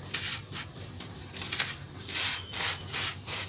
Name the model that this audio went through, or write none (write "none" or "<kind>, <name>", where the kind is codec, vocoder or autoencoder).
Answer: none